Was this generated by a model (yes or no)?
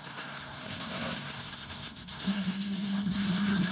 yes